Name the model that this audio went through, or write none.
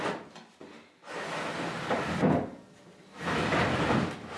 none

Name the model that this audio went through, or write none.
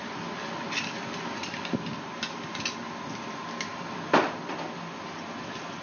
none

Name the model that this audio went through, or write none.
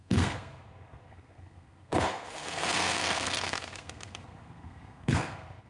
codec, SNAC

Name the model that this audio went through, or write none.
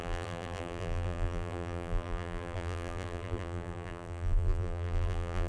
vocoder, BigVGAN v2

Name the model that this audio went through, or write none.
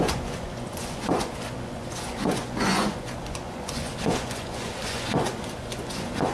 vocoder, Vocos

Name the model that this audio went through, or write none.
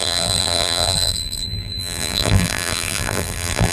vocoder, BigVGAN v2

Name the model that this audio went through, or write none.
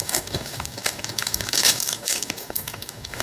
codec, DAC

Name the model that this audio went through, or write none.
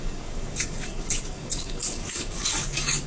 codec, DAC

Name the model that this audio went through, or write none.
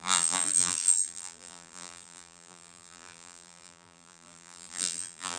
vocoder, BigVGAN v2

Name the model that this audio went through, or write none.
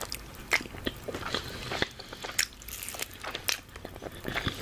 none